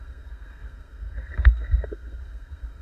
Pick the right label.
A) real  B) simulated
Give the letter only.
B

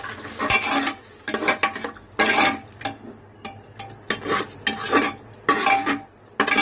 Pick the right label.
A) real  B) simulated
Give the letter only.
A